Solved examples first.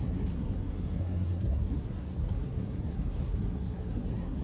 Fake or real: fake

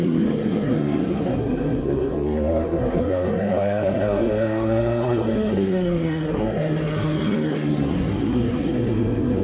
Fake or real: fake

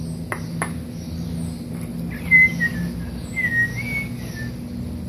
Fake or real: real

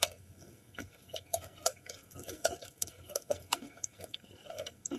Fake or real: fake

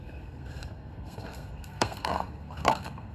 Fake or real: fake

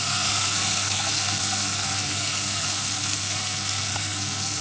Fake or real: fake